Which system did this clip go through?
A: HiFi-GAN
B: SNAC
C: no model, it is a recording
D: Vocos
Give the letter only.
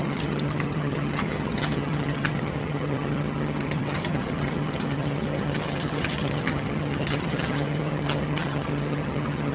A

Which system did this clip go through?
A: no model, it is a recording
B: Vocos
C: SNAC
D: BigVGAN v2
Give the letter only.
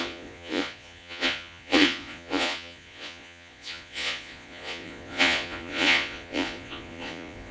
B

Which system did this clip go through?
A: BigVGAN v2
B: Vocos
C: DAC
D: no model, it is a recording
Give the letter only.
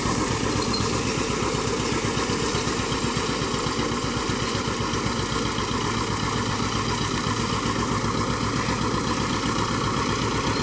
D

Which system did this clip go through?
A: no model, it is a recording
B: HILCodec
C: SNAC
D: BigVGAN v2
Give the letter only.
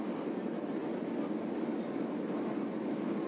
A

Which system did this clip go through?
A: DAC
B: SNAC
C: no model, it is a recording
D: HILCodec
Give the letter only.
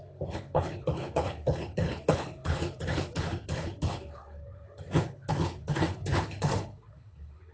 D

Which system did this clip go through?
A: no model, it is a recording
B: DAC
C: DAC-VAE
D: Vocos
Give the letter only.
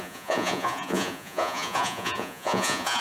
D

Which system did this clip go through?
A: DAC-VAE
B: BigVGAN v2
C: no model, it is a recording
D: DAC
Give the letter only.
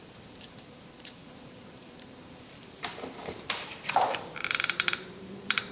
B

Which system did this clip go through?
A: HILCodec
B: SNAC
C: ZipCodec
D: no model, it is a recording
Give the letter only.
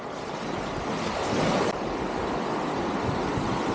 D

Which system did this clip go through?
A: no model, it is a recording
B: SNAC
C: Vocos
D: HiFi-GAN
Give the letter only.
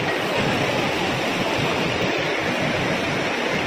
A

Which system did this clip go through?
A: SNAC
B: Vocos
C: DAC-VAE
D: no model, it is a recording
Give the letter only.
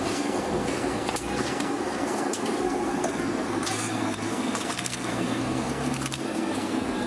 A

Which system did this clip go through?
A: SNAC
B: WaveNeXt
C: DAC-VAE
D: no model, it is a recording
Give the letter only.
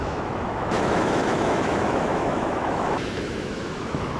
C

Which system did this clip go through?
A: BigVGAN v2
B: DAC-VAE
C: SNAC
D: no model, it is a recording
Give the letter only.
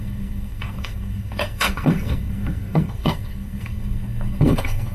C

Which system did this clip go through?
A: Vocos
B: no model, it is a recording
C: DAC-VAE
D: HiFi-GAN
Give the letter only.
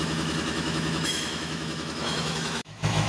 C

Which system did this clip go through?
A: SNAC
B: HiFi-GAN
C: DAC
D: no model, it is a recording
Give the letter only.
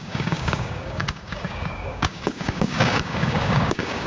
C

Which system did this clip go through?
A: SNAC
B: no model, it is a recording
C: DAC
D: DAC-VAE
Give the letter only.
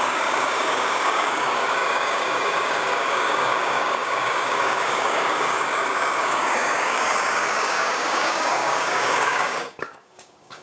C